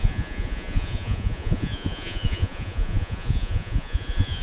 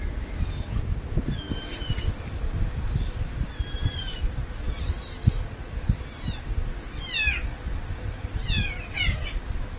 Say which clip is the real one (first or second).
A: second